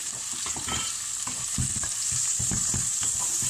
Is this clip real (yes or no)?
no